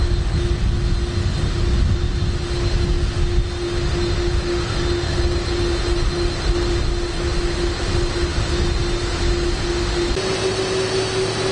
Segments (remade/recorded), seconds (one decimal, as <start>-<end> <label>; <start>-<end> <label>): 0.0-11.5 recorded